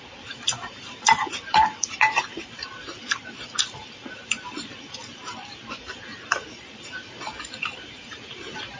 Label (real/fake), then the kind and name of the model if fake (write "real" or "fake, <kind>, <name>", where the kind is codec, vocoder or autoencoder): fake, vocoder, BigVGAN v2